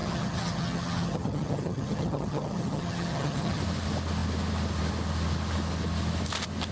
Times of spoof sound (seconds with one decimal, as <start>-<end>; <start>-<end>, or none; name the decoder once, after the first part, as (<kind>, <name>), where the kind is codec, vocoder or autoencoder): 0.0-3.6 (vocoder, HiFi-GAN)